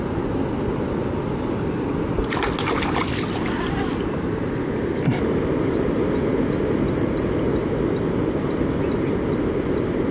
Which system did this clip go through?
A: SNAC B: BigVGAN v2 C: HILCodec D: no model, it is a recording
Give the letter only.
D